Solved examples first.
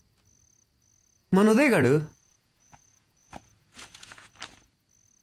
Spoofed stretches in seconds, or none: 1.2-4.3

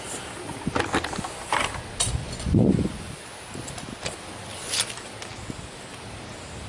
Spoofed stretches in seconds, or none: 2.2-3.2

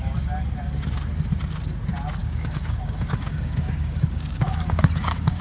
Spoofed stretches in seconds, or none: 2.2-5.4

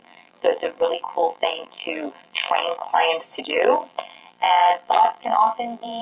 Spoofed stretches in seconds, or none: 0.0-2.9; 3.4-6.0

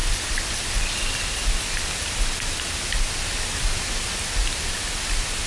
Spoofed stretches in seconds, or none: none

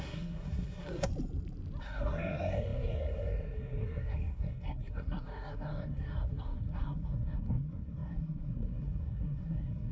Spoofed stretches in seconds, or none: 0.0-1.1; 1.8-9.9